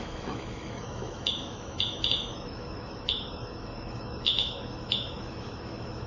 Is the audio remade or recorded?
remade